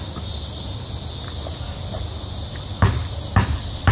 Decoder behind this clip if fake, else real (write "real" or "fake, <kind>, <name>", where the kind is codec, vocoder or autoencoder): real